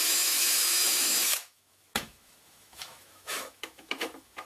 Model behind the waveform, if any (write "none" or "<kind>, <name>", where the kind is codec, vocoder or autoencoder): autoencoder, DAC-VAE